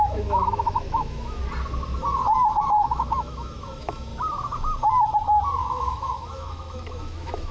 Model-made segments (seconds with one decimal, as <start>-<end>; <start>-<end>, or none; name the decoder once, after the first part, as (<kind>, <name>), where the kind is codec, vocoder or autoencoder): 0.0-1.4 (autoencoder, DAC-VAE); 2.5-4.1; 5.6-7.5